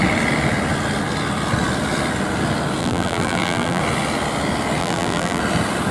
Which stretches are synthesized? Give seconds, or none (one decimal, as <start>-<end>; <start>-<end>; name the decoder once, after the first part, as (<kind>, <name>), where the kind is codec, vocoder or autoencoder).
2.8-3.8 (vocoder, BigVGAN v2); 4.8-5.4